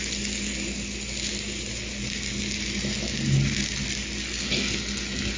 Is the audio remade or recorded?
recorded